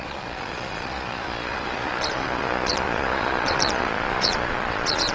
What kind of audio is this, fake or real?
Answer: fake